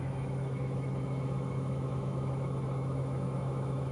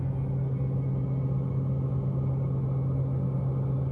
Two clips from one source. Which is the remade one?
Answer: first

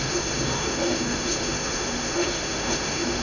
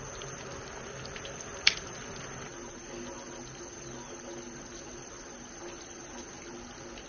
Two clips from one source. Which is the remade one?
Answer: first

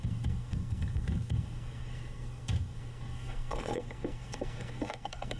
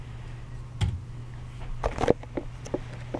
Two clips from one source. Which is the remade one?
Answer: first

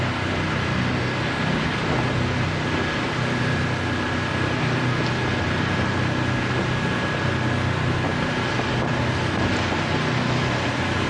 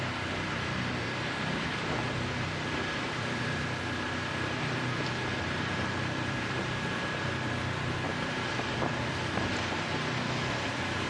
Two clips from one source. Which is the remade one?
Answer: second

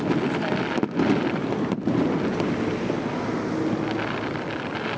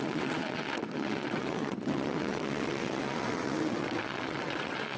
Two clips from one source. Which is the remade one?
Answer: second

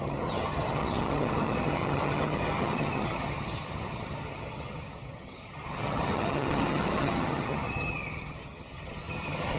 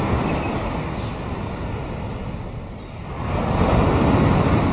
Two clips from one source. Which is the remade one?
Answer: first